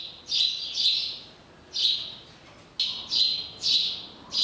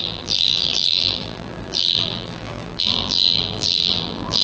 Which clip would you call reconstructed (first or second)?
second